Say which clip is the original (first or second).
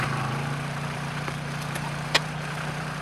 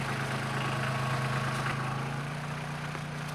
second